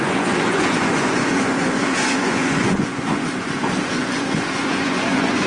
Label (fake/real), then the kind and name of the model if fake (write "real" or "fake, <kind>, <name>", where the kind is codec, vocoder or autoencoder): fake, vocoder, Vocos